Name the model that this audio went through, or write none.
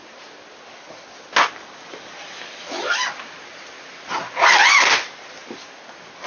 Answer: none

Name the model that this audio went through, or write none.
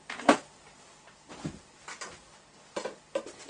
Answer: none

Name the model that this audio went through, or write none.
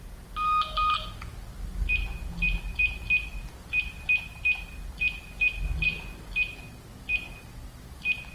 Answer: none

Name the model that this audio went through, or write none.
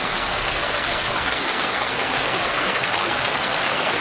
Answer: codec, SNAC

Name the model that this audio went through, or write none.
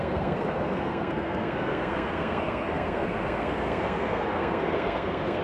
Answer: codec, SNAC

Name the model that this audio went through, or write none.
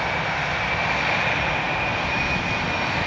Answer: none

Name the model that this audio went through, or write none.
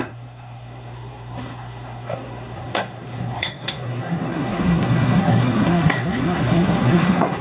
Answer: codec, SNAC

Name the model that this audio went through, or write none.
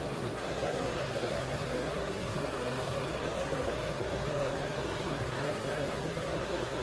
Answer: codec, SNAC